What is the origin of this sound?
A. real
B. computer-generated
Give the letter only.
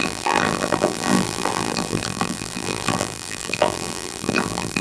B